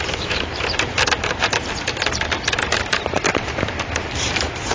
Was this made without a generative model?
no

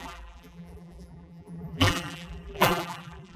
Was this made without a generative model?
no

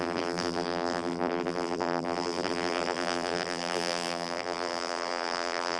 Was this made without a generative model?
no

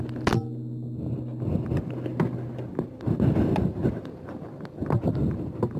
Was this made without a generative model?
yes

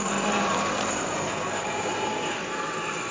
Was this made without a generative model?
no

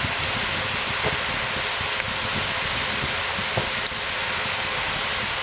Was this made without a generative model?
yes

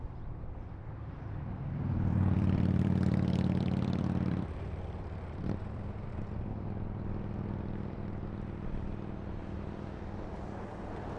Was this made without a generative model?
no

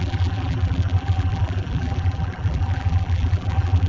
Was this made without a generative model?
no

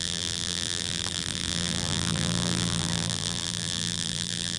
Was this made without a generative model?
no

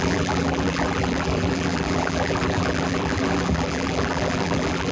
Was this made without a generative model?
no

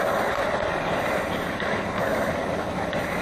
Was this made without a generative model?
yes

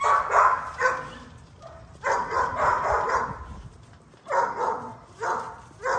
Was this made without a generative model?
yes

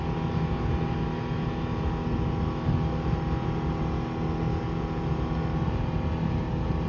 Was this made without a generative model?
yes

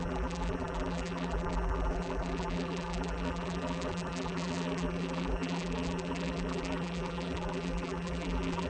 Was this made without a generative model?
no